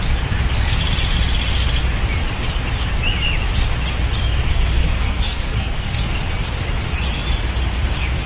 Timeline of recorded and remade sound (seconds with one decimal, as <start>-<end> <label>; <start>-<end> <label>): 0.0-4.5 recorded; 4.5-6.0 remade; 6.0-8.3 recorded